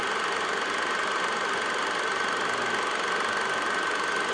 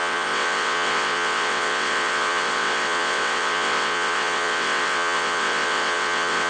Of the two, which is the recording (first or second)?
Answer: first